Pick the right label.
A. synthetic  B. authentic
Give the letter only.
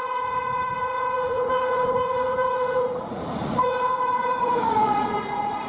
A